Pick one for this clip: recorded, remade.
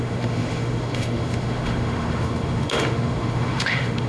remade